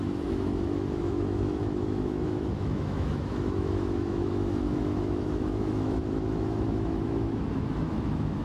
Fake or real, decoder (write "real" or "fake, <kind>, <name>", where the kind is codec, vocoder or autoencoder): fake, autoencoder, DAC-VAE